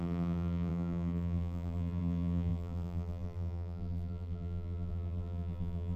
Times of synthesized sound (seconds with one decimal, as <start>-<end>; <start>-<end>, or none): 0.0-6.0